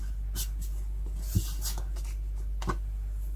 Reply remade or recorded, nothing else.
recorded